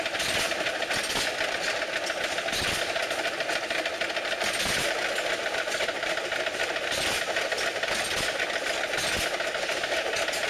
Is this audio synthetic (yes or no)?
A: no